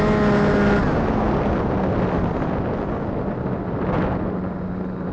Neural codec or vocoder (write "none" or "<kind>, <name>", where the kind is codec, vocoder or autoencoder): none